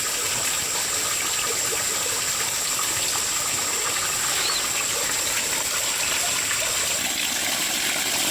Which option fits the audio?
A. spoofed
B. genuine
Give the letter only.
B